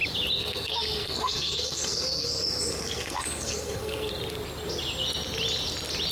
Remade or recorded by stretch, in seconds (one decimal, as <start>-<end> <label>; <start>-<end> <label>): 0.0-0.4 recorded; 0.4-4.1 remade; 4.1-6.1 recorded